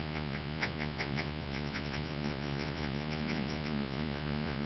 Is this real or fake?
fake